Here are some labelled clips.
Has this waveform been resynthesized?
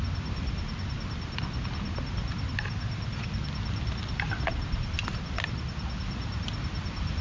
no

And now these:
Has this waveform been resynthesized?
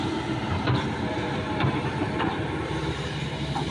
yes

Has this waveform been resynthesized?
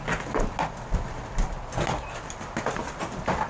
no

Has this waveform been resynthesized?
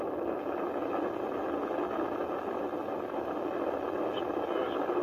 no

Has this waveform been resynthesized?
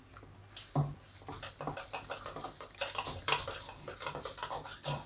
no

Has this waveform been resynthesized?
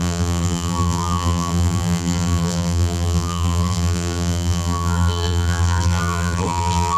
yes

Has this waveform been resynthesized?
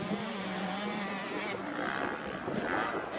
yes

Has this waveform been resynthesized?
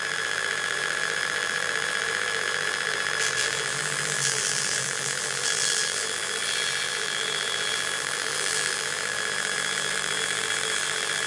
yes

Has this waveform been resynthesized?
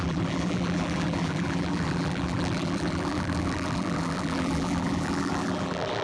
yes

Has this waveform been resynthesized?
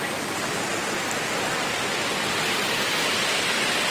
no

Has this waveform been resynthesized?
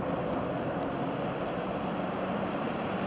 yes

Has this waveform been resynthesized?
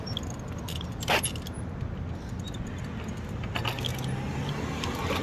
no